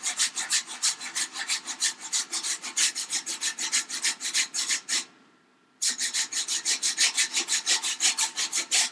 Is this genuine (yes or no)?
yes